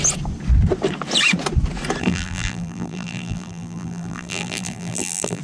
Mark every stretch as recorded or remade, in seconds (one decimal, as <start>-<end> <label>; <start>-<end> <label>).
0.0-2.0 recorded; 2.0-5.4 remade